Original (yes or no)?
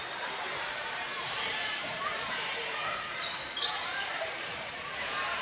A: no